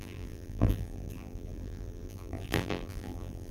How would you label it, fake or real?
fake